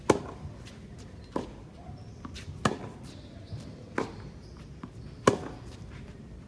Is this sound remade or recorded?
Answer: recorded